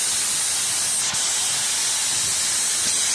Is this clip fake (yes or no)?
no